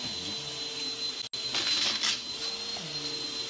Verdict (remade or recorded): recorded